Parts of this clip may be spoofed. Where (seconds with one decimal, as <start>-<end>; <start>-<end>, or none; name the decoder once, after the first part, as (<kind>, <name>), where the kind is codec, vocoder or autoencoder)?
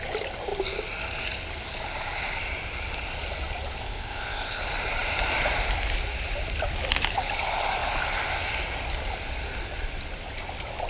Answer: 3.8-4.6 (codec, ZipCodec)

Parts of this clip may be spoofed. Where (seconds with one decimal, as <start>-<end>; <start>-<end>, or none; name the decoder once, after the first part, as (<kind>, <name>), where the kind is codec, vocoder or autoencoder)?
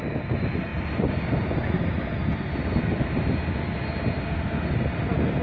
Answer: none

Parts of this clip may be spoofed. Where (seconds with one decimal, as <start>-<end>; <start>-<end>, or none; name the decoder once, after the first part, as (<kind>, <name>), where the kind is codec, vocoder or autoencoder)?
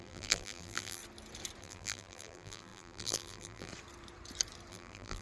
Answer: 0.0-1.0 (vocoder, BigVGAN v2); 1.6-3.7; 4.7-5.2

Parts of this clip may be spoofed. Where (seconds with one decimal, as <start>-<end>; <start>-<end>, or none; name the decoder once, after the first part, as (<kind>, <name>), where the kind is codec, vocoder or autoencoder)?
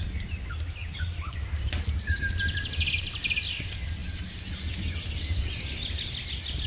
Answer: 0.8-2.4 (vocoder, BigVGAN v2)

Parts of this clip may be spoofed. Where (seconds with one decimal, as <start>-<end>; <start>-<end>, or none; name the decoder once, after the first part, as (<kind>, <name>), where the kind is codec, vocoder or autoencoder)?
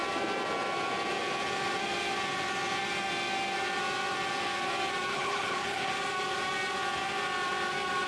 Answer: 5.1-5.9 (codec, HILCodec)